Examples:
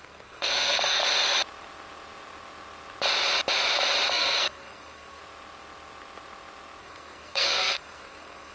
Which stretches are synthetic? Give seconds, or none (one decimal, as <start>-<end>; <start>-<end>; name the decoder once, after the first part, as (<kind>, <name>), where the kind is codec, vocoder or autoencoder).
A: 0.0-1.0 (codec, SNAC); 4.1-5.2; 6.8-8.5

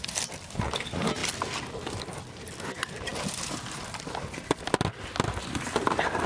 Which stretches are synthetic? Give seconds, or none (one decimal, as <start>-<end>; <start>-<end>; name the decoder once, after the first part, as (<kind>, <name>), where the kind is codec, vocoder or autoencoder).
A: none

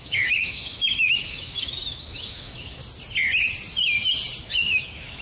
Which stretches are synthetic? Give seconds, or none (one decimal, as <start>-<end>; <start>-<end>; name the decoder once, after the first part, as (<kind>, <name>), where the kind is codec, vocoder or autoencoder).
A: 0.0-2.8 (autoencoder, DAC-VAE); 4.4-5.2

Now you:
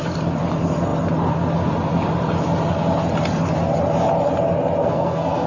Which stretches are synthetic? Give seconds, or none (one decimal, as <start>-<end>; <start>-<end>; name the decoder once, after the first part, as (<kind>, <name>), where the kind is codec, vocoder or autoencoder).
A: 4.8-5.5 (codec, SNAC)

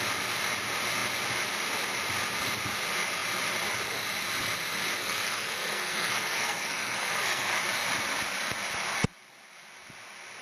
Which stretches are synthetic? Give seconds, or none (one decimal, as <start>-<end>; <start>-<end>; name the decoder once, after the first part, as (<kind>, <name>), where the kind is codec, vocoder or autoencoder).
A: 5.0-7.6 (codec, SNAC)

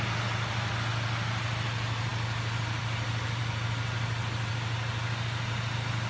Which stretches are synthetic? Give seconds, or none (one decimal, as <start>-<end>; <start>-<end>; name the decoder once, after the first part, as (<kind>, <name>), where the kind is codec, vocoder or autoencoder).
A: none

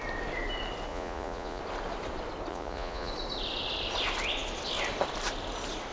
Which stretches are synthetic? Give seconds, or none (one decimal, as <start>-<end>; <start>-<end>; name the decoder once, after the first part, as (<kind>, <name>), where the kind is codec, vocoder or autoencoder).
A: 0.9-1.6 (vocoder, Vocos); 2.5-3.1

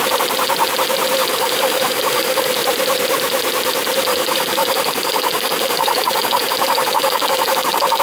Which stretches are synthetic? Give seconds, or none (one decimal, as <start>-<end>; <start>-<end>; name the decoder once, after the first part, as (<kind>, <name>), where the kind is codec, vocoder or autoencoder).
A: 1.3-2.5 (codec, DAC); 4.1-8.0